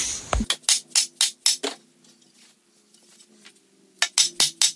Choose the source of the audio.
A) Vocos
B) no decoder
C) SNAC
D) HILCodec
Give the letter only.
B